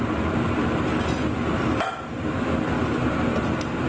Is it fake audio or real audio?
real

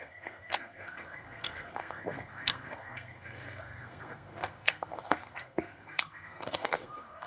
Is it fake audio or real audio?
fake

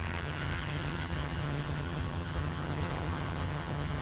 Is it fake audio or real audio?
fake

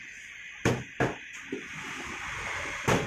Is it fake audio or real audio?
real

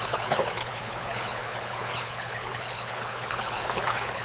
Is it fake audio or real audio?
fake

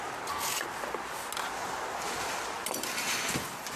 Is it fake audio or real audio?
real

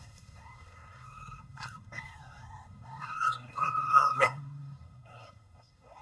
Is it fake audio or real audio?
fake